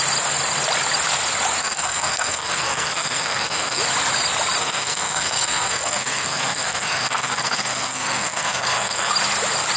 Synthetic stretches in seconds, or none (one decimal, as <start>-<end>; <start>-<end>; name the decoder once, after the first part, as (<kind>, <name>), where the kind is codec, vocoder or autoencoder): 1.6-3.8 (codec, SNAC); 4.6-9.1